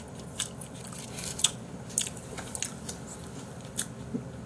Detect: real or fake real